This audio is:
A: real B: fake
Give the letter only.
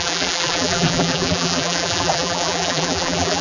B